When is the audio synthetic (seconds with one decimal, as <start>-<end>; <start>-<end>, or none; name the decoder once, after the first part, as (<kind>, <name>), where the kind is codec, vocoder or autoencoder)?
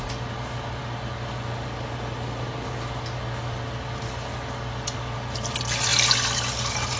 none